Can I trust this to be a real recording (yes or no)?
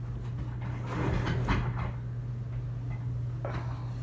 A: yes